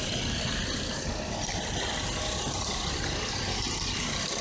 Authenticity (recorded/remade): recorded